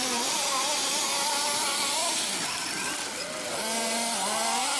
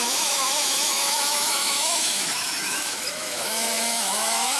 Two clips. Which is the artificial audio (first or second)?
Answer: second